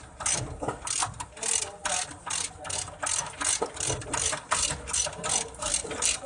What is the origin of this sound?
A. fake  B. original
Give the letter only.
B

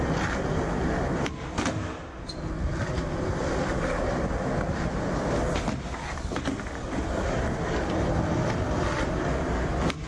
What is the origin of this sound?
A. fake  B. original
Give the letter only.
B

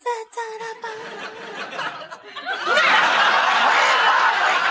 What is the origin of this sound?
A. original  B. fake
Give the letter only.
A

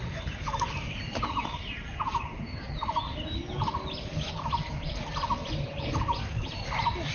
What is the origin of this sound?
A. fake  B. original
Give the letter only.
B